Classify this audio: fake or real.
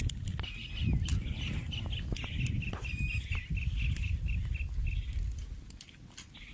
real